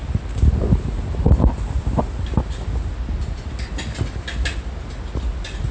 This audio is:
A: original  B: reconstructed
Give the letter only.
A